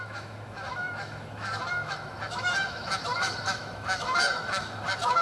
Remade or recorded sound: remade